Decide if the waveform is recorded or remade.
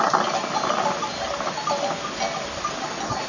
recorded